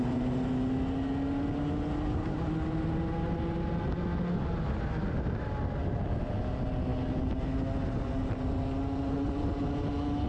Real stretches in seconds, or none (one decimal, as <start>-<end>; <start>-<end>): 0.0-10.3